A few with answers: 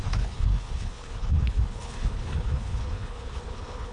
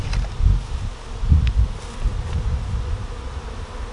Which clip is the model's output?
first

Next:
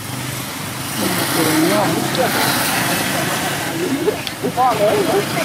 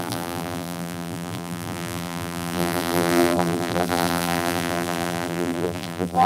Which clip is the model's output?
second